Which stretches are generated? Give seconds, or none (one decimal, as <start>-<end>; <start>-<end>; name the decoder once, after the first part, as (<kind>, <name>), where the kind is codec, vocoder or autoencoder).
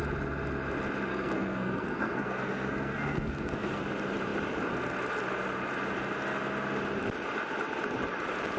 1.1-3.8 (codec, SNAC)